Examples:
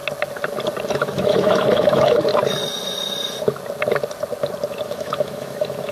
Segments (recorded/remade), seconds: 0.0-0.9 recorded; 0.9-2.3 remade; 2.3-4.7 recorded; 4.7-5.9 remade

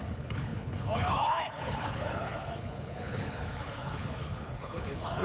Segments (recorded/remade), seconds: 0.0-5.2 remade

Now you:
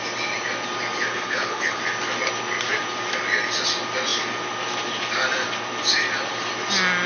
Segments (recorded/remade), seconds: 0.0-1.1 recorded; 1.1-1.8 remade; 1.8-7.1 recorded